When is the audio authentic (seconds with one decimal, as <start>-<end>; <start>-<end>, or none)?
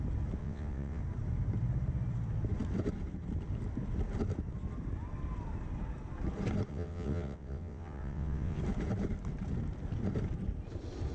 0.0-0.4; 1.0-6.7; 8.6-11.1